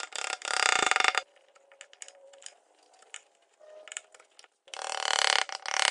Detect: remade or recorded recorded